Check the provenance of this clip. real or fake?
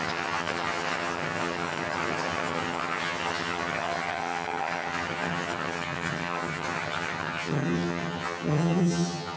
fake